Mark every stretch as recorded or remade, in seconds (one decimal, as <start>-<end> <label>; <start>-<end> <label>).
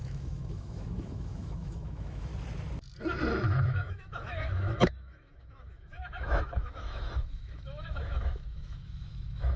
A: 0.0-2.3 remade; 2.3-3.3 recorded; 3.3-9.6 remade